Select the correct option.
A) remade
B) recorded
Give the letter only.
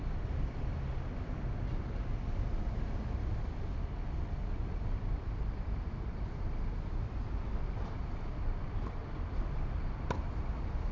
B